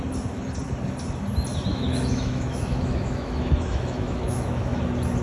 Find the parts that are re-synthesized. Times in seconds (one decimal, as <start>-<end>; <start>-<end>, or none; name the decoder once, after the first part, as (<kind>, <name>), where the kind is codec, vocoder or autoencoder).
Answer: 1.7-4.8 (autoencoder, DAC-VAE)